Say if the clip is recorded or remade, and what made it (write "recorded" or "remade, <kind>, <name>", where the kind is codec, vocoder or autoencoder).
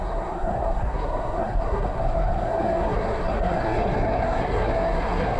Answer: remade, codec, SNAC